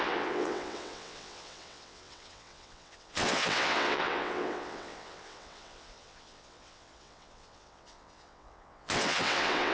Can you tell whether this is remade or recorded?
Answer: remade